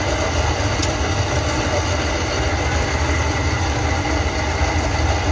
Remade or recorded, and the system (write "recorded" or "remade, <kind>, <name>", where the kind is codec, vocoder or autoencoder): recorded